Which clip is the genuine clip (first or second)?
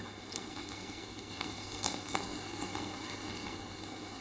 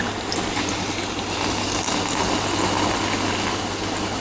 second